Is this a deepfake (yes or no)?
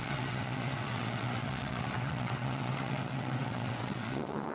yes